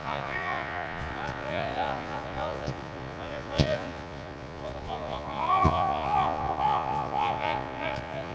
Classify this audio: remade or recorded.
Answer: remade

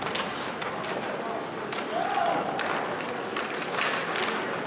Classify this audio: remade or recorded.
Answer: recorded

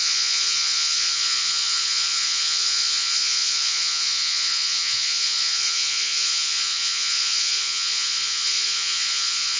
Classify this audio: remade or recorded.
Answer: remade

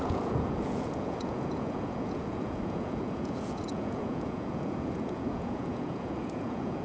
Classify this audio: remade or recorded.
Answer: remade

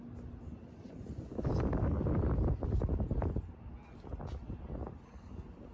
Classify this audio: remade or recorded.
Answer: recorded